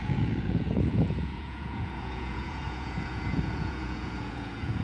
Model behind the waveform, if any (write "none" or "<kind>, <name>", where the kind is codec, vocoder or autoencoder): vocoder, Vocos